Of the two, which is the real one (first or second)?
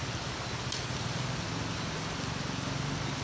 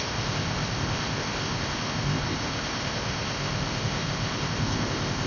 first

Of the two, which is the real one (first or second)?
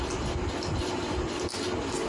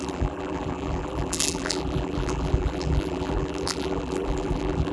first